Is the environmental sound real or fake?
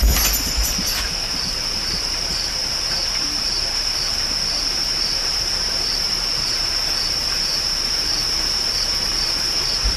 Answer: fake